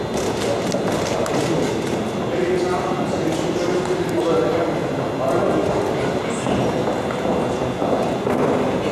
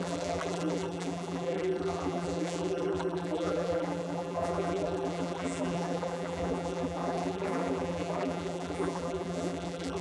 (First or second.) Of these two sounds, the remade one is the second